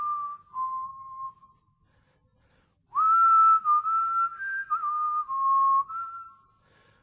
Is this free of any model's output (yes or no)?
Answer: yes